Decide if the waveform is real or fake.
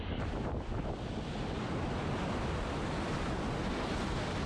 real